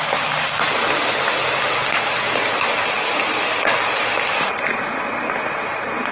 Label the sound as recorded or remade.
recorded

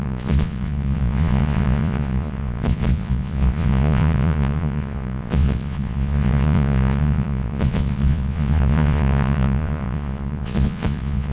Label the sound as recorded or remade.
remade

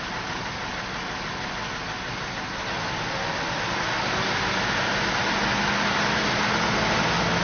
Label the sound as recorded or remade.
recorded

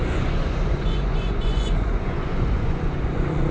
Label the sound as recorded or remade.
remade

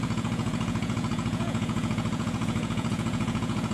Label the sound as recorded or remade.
remade